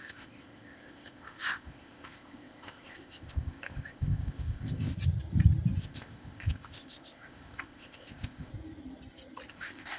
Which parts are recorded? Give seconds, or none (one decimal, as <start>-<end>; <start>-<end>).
4.9-5.8; 8.5-9.5